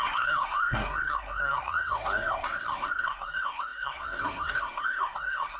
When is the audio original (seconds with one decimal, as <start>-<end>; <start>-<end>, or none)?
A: none